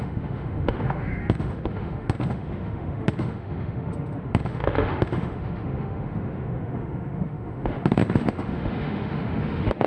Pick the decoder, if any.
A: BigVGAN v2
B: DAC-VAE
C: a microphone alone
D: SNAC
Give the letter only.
B